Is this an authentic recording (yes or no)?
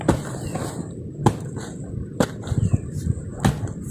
yes